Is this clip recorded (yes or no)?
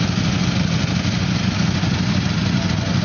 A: yes